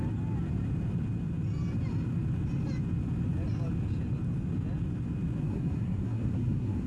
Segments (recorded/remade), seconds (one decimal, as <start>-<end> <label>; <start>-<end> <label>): 0.0-5.4 recorded; 5.4-6.9 remade